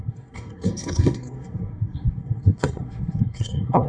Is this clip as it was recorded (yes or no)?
no